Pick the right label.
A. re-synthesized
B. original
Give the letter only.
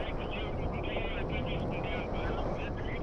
B